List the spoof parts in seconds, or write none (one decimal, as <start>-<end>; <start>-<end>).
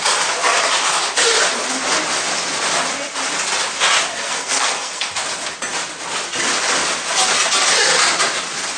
4.1-5.1